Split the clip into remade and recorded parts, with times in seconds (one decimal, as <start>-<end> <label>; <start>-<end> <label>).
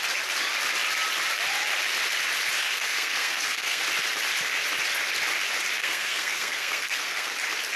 0.0-2.6 recorded; 2.6-3.8 remade; 3.8-5.8 recorded; 5.8-7.3 remade; 7.3-7.8 recorded